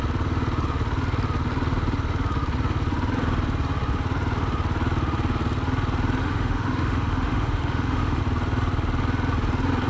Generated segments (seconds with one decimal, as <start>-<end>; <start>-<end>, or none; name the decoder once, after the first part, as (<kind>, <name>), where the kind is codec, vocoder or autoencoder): 6.2-8.2 (autoencoder, DAC-VAE)